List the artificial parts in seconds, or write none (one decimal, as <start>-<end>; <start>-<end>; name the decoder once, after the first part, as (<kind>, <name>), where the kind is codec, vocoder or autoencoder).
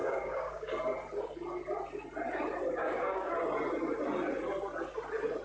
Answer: 0.0-0.7 (codec, DAC); 2.8-3.3